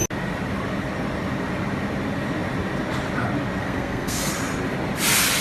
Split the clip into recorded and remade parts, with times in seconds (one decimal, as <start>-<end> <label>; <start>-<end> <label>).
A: 0.0-3.6 recorded; 3.6-4.3 remade; 4.3-5.4 recorded